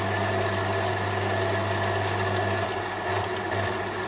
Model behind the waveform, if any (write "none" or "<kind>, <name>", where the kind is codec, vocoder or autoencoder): none